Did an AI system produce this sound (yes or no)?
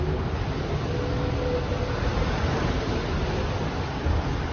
no